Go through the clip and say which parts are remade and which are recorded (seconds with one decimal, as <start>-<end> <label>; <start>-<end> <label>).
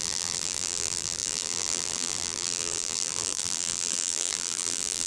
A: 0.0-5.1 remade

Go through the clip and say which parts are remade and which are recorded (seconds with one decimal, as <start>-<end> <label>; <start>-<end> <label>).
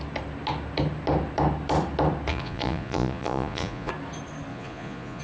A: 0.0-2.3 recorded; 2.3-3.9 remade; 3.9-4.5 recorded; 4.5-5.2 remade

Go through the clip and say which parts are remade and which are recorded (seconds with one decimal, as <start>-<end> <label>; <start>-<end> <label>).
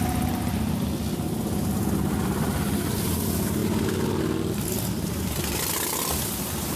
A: 0.0-6.8 recorded